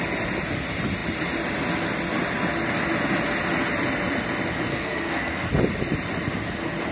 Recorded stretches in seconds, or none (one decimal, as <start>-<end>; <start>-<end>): 0.0-4.7; 5.5-6.9